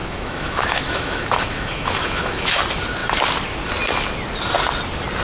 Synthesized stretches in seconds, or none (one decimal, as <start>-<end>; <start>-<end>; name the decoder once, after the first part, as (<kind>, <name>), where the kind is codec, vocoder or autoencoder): 0.0-2.6 (autoencoder, DAC-VAE)